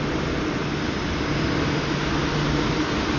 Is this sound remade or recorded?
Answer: recorded